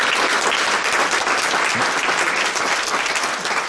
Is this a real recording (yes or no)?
yes